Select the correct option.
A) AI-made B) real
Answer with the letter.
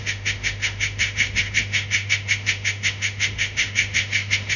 A